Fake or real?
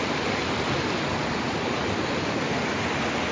real